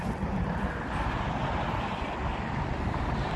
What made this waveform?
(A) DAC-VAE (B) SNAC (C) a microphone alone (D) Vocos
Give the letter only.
C